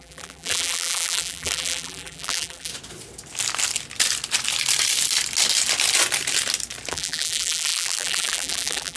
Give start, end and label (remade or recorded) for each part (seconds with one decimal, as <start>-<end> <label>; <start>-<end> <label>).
0.0-2.7 remade; 2.7-6.9 recorded; 6.9-9.0 remade